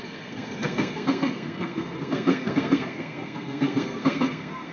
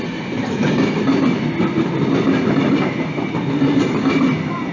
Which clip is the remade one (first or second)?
first